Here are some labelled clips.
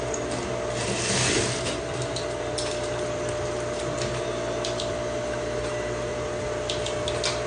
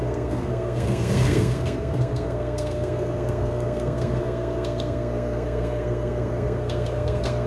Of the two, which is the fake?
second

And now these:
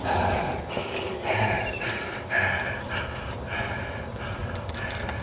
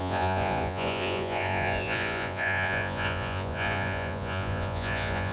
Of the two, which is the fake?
second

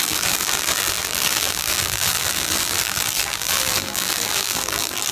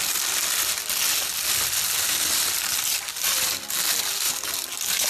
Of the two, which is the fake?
first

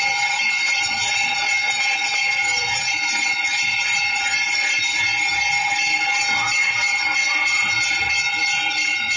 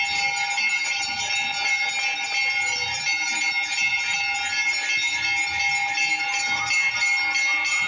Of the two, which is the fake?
first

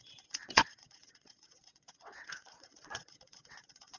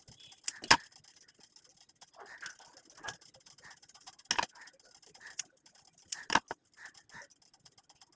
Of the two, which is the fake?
first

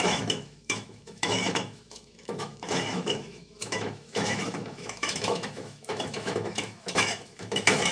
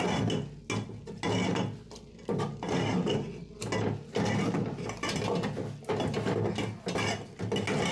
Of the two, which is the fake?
first